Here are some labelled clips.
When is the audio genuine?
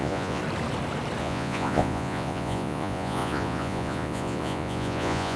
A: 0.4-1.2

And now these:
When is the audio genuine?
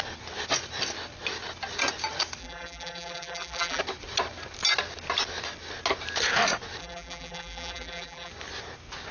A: 0.0-2.4; 3.8-6.8; 8.3-9.1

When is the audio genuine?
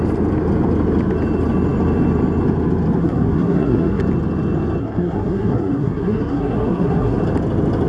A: 0.0-3.0; 4.0-4.8; 7.2-7.9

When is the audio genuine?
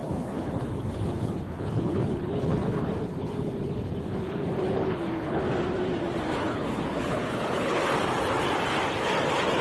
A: 5.4-6.5; 7.8-9.6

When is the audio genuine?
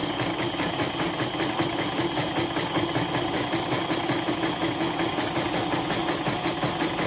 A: 0.0-7.1